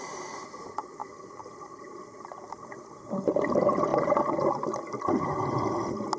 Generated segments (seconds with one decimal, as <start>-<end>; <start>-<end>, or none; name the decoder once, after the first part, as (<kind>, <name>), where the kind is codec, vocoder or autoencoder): none